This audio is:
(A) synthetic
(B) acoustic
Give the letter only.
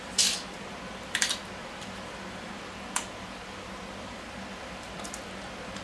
A